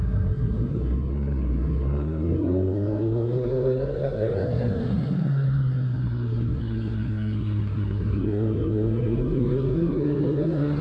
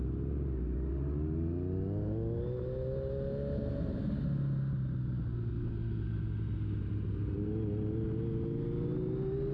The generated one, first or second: first